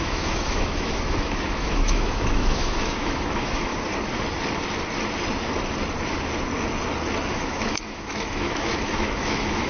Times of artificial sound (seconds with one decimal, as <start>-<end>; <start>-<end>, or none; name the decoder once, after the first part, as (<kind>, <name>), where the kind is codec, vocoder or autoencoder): 0.0-3.7 (autoencoder, DAC-VAE); 7.3-9.7